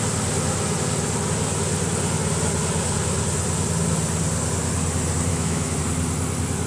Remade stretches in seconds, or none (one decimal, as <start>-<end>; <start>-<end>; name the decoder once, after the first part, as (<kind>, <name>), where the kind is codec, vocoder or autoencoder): 5.3-5.8 (autoencoder, DAC-VAE)